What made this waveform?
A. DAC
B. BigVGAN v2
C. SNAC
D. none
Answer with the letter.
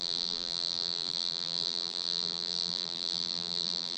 B